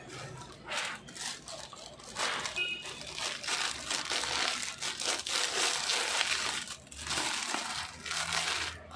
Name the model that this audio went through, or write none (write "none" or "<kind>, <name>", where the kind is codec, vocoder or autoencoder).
none